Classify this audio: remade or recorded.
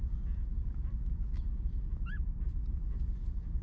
recorded